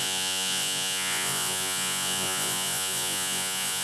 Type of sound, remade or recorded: remade